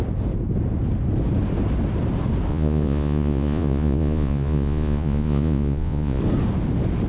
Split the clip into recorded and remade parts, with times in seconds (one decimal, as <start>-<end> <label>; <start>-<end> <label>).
0.0-2.5 recorded; 2.5-6.2 remade; 6.2-7.1 recorded